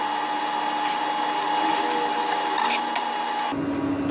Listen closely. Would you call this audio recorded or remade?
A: recorded